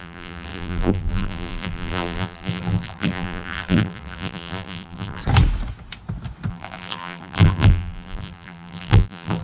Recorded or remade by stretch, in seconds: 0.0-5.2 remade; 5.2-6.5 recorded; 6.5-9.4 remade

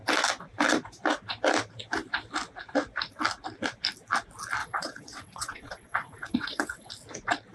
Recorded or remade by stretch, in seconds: 0.0-4.6 recorded; 4.6-6.9 remade; 6.9-7.5 recorded

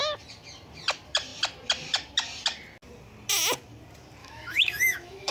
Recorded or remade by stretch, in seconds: 0.0-4.2 recorded; 4.2-5.3 remade

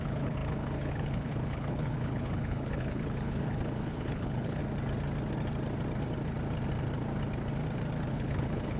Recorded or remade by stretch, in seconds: 0.0-4.6 remade; 4.6-8.1 recorded; 8.1-8.8 remade

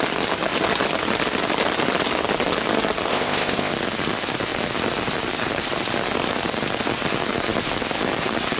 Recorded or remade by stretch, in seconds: 0.0-3.1 recorded; 3.1-3.7 remade; 3.7-8.6 recorded

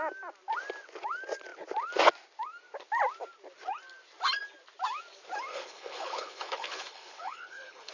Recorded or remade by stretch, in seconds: 0.0-5.5 recorded; 5.5-7.9 remade

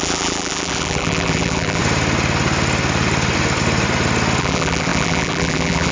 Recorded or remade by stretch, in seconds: 0.0-1.8 remade; 1.8-4.4 recorded; 4.4-5.9 remade

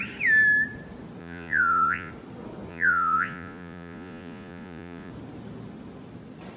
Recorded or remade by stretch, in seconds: 0.0-1.2 recorded; 1.2-2.1 remade; 2.1-2.7 recorded; 2.7-5.1 remade; 5.1-6.6 recorded